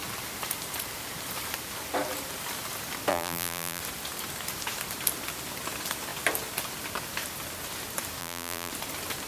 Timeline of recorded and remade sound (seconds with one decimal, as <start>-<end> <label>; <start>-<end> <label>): 0.0-3.1 recorded; 3.1-3.8 remade; 3.8-8.2 recorded; 8.2-8.7 remade; 8.7-9.3 recorded